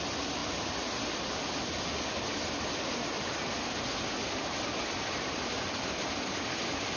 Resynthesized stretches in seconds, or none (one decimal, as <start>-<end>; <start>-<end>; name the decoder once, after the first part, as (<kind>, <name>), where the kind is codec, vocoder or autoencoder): none

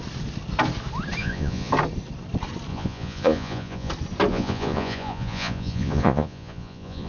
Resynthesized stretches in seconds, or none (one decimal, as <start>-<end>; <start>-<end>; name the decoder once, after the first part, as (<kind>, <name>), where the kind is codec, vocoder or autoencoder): 1.2-1.7 (vocoder, Vocos); 2.7-3.9; 4.3-7.1

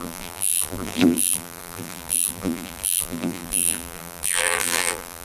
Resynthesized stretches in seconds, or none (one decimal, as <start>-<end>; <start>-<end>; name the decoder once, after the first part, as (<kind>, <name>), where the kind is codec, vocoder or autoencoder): 0.0-5.2 (vocoder, BigVGAN v2)

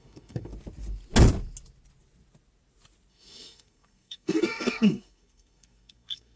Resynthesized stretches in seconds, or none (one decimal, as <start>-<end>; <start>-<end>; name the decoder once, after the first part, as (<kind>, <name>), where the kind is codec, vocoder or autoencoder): 0.0-0.5 (codec, SNAC); 3.1-6.4

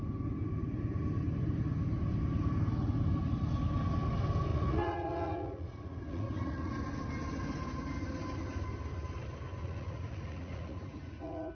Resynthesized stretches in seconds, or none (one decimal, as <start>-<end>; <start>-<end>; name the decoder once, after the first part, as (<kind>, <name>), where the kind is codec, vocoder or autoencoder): 4.5-6.7 (vocoder, Vocos); 9.6-11.5

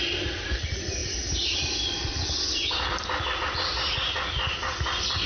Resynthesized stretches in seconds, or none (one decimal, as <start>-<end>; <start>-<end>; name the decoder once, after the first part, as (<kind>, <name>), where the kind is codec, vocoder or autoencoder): none

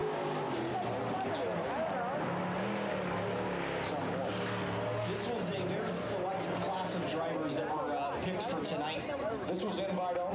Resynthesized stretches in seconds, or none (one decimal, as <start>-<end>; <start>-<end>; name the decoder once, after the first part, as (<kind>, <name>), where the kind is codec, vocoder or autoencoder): none